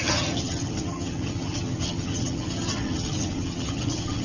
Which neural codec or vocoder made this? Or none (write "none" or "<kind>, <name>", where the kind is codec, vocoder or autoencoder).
vocoder, HiFi-GAN